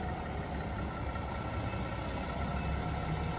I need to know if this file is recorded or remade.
recorded